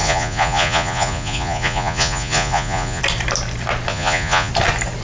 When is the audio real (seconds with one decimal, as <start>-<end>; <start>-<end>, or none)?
3.0-3.9; 4.5-5.0